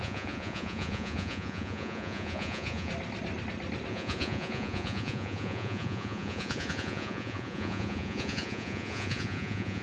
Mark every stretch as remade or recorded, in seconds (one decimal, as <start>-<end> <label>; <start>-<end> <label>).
0.0-2.9 remade; 2.9-3.9 recorded; 3.9-9.8 remade